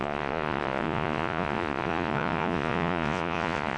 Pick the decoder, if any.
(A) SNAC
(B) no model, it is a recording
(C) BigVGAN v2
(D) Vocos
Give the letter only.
D